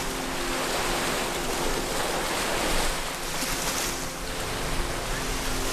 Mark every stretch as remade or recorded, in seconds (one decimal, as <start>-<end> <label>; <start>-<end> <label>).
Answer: 0.0-5.7 recorded